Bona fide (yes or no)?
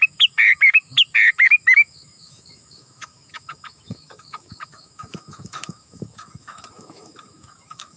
no